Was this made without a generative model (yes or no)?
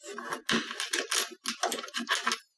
yes